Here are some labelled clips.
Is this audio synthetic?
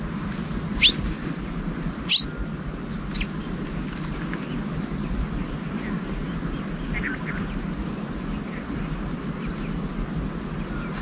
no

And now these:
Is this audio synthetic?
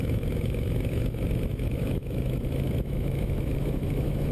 yes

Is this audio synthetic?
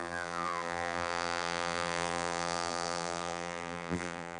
yes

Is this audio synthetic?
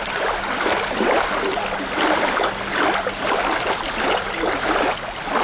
no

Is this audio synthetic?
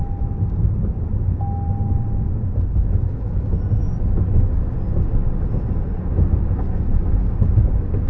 no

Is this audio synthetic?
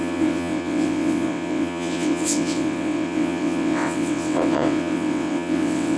yes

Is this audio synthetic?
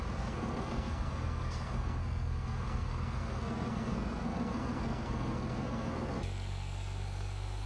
yes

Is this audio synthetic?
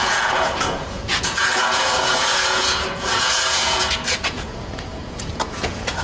yes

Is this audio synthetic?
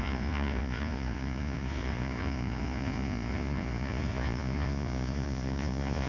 yes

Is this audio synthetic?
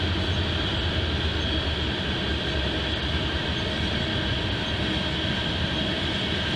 no